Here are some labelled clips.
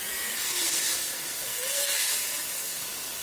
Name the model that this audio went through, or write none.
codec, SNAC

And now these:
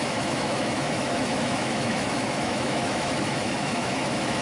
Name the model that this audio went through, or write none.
autoencoder, DAC-VAE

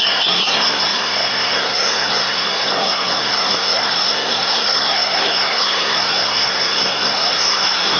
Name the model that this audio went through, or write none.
codec, SNAC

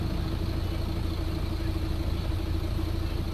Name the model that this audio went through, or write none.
none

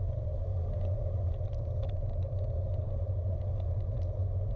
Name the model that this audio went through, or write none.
none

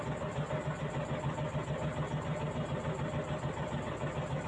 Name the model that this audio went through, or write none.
none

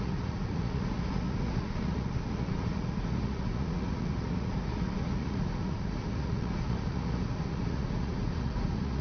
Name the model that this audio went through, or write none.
vocoder, Vocos